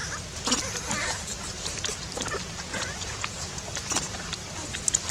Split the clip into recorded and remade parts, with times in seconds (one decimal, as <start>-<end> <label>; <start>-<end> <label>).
0.0-2.7 recorded; 2.7-3.6 remade; 3.6-5.1 recorded